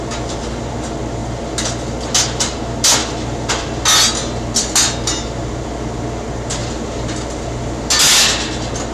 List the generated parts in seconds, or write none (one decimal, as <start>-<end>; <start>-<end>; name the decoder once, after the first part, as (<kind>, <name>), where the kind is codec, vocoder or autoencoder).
3.0-3.5 (vocoder, BigVGAN v2); 6.6-7.9